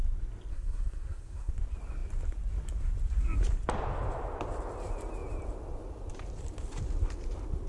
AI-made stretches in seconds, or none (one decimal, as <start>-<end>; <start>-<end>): 0.5-1.5